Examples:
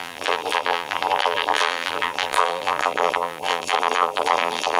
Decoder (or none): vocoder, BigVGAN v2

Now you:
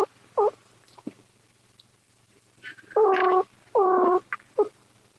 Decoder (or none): vocoder, BigVGAN v2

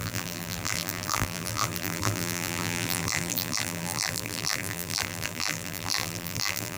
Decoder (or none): vocoder, BigVGAN v2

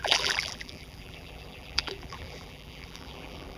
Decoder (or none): vocoder, BigVGAN v2